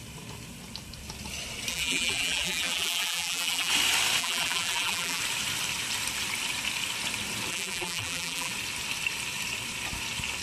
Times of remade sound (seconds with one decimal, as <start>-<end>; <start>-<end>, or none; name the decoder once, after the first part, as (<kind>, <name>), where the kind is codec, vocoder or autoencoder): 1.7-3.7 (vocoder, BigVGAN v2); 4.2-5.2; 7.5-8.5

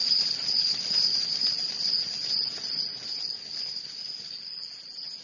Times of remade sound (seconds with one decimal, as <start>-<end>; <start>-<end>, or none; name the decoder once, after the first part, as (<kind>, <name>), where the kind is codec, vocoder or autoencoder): 0.0-3.1 (vocoder, BigVGAN v2)

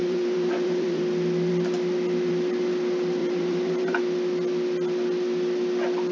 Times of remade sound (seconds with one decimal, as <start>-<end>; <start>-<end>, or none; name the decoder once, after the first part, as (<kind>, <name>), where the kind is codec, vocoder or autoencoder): 0.0-1.0 (vocoder, BigVGAN v2); 3.2-4.0

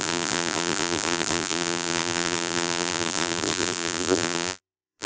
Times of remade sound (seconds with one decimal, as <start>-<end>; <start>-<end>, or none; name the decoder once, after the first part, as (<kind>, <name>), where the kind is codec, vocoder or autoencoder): 0.0-5.1 (vocoder, BigVGAN v2)

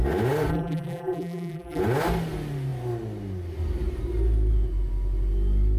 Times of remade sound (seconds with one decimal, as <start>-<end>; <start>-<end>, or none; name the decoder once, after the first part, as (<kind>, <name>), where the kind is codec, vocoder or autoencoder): 0.5-1.8 (vocoder, BigVGAN v2)

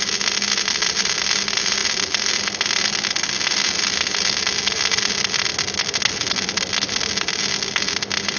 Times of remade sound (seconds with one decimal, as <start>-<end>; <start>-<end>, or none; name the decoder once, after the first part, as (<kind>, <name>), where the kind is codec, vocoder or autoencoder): none